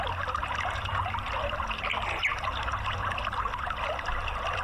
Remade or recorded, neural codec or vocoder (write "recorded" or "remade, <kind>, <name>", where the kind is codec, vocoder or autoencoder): recorded